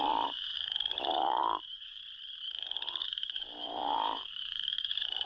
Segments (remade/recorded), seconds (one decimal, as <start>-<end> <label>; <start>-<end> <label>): 0.0-2.0 remade; 2.0-2.5 recorded; 2.5-5.3 remade